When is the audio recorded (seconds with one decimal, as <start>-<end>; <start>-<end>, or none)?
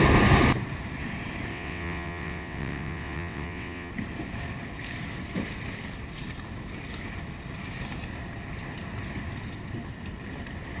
0.0-1.5; 3.9-10.8